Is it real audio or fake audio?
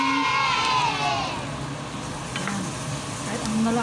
real